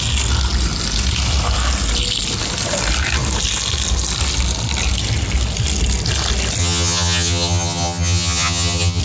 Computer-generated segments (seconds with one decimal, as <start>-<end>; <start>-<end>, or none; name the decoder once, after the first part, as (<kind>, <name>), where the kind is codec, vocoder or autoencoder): 6.6-9.0 (vocoder, HiFi-GAN)